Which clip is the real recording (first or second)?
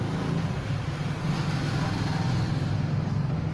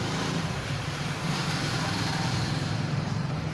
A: first